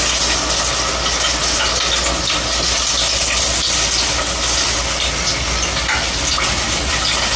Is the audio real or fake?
real